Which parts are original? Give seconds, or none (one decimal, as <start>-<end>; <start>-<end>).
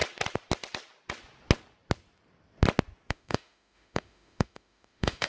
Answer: 0.0-3.1